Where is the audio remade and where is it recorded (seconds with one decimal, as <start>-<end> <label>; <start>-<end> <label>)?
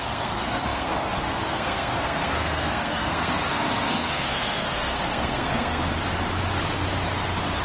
0.0-5.9 remade; 5.9-7.6 recorded